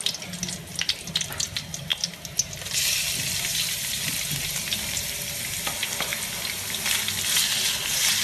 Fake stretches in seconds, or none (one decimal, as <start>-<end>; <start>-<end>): none